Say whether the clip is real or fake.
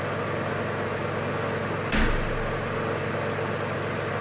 real